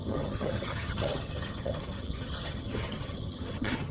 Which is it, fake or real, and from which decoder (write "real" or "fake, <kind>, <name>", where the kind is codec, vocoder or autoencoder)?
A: fake, vocoder, HiFi-GAN